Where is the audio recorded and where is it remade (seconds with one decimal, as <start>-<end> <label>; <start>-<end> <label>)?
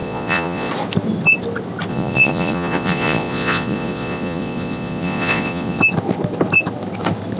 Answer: 0.0-0.7 remade; 0.7-1.9 recorded; 1.9-5.8 remade; 5.8-7.4 recorded